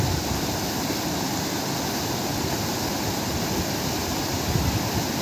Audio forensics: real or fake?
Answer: real